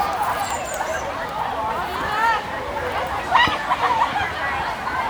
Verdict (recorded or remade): recorded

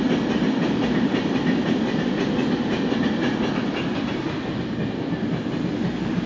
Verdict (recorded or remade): recorded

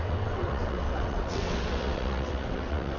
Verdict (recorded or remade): remade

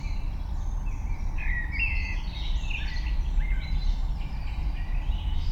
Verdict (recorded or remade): recorded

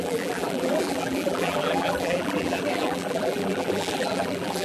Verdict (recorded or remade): remade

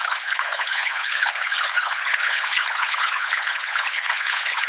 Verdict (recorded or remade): remade